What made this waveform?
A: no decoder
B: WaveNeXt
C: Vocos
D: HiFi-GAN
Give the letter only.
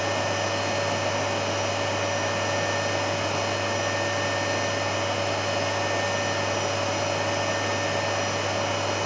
A